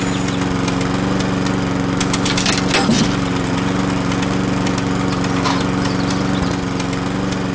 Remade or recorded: recorded